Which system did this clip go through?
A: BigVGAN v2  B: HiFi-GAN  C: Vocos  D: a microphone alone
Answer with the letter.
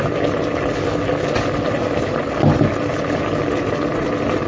D